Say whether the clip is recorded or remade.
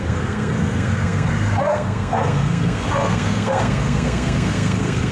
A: remade